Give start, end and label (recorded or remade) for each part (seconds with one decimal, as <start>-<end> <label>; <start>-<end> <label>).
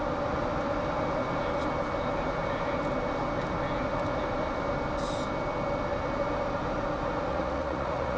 0.0-7.3 recorded; 7.3-8.2 remade